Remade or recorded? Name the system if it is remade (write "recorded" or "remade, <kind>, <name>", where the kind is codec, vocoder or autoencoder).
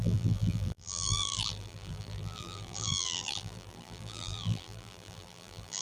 remade, vocoder, BigVGAN v2